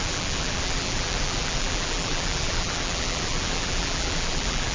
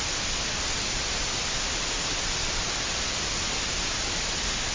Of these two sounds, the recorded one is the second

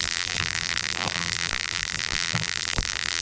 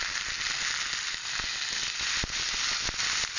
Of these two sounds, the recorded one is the second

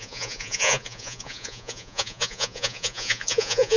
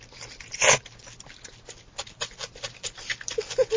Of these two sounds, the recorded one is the second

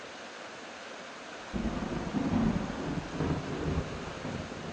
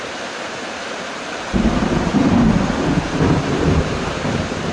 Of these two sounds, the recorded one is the first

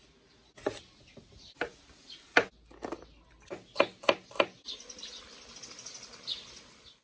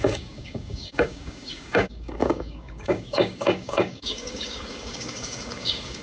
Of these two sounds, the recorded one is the first